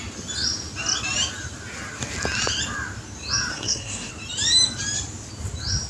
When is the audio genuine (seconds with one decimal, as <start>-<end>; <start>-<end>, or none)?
0.0-3.5; 4.1-5.9